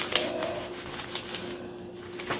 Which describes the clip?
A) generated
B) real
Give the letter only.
B